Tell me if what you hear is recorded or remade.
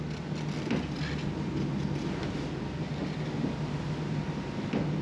recorded